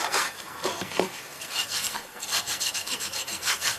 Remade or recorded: remade